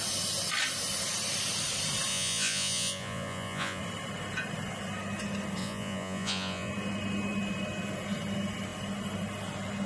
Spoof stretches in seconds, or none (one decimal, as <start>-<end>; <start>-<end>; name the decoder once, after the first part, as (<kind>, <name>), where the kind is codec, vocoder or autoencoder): 2.1-3.8 (vocoder, Vocos); 5.6-6.7